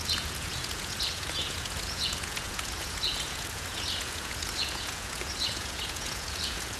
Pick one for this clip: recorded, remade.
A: remade